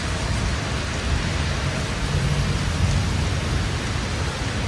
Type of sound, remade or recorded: recorded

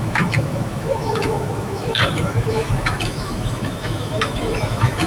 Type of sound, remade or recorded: remade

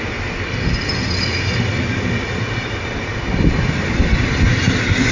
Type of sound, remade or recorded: recorded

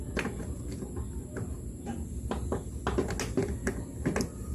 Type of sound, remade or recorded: recorded